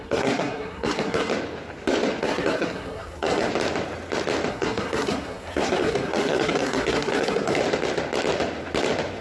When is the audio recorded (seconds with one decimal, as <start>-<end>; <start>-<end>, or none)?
1.3-2.2; 3.5-4.5; 7.6-9.2